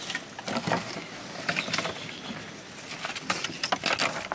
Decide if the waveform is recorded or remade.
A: recorded